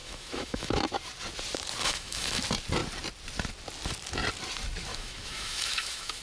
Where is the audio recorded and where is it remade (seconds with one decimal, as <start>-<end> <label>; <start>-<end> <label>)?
0.0-0.8 remade; 0.8-1.8 recorded; 1.8-2.4 remade; 2.4-4.9 recorded; 4.9-6.2 remade